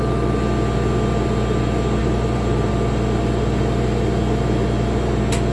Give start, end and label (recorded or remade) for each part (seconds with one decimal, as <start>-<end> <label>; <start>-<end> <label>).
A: 0.0-2.0 recorded; 2.0-2.7 remade; 2.7-5.5 recorded